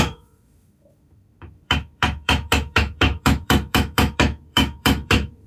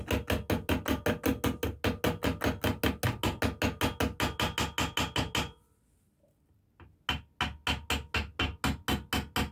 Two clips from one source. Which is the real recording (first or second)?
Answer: second